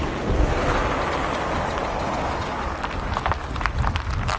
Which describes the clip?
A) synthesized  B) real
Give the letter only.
B